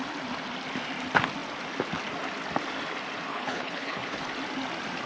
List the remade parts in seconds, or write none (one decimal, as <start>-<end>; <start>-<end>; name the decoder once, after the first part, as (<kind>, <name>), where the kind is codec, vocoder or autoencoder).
3.3-4.2 (codec, HILCodec)